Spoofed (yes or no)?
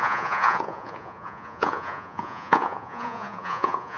yes